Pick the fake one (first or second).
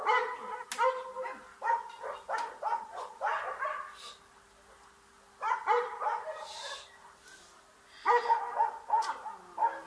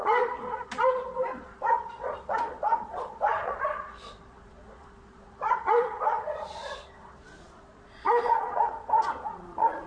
second